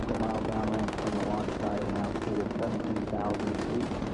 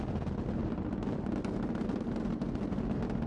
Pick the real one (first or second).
second